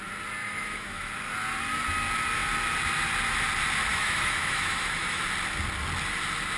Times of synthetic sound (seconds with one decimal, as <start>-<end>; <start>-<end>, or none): 0.4-1.1; 3.9-5.2